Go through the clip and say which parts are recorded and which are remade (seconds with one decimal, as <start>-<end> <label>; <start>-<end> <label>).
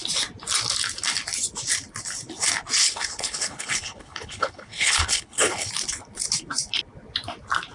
0.0-2.8 recorded; 2.8-5.7 remade; 5.7-7.7 recorded